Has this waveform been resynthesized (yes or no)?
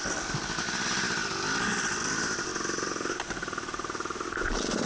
no